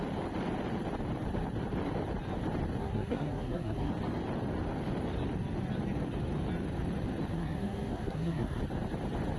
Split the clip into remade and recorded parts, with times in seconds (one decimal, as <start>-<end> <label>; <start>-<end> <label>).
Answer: 0.0-2.8 recorded; 2.8-3.9 remade; 3.9-7.3 recorded; 7.3-8.6 remade; 8.6-9.4 recorded